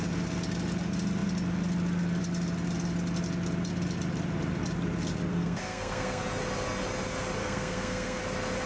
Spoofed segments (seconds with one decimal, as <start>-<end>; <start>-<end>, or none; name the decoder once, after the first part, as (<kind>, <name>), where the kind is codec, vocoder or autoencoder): 5.3-6.2 (codec, SNAC); 7.4-8.2